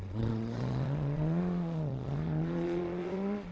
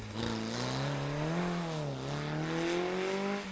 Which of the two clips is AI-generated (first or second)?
first